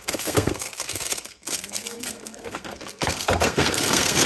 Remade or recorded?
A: remade